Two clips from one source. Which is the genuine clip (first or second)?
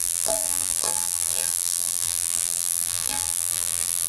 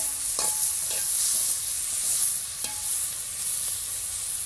second